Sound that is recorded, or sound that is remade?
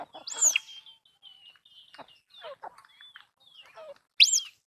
recorded